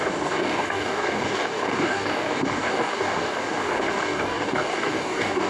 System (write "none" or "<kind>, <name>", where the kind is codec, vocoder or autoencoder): codec, DAC